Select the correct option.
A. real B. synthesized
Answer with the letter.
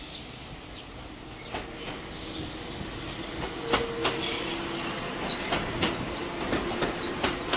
A